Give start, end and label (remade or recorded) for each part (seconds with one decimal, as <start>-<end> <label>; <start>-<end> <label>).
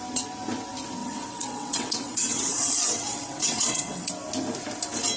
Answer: 0.0-1.0 recorded; 1.0-4.1 remade; 4.1-5.2 recorded